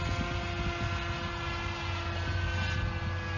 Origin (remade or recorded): recorded